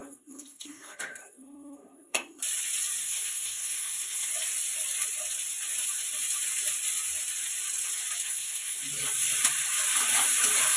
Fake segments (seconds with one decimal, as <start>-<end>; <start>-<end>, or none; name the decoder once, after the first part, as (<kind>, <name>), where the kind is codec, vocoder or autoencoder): 0.0-2.4 (codec, SNAC); 3.0-4.3; 8.2-8.8